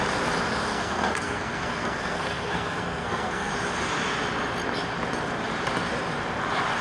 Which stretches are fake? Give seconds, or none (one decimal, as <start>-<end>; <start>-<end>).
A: 0.7-3.5